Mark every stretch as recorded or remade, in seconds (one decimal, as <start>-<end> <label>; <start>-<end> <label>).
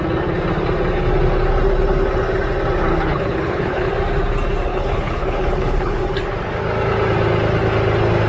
0.0-2.9 recorded; 2.9-3.9 remade; 3.9-4.7 recorded; 4.7-6.0 remade; 6.0-8.3 recorded